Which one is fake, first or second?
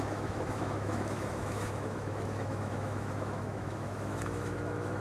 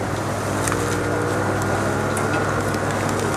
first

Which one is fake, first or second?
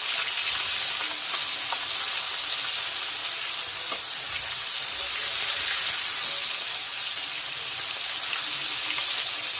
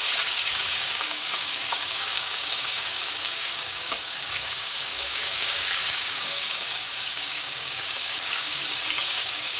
second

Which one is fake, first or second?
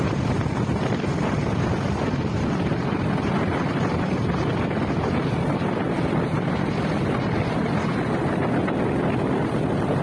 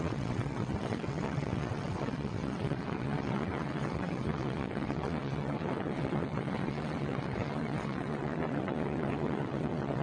second